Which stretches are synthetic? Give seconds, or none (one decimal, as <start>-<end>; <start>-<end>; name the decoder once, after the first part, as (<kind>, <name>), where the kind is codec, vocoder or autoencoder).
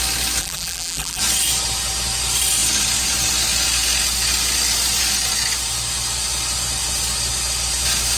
0.4-1.2 (vocoder, BigVGAN v2)